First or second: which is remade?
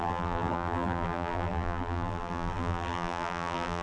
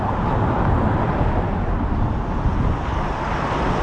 first